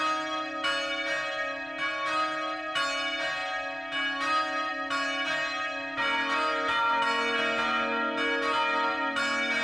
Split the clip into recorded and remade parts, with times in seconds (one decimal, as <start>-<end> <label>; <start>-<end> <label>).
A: 0.0-9.6 recorded